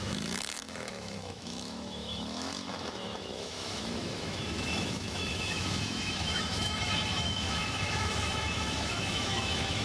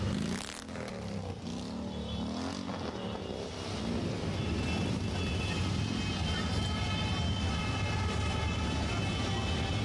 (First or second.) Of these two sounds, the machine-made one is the first